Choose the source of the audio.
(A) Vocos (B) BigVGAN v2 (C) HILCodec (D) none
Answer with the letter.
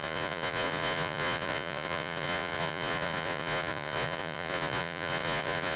A